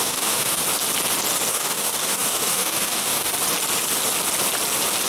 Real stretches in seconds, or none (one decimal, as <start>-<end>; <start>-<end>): 0.6-1.5; 3.3-5.1